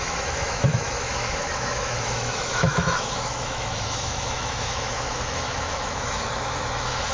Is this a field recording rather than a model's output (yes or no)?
no